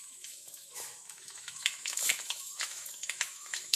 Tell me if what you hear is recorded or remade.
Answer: remade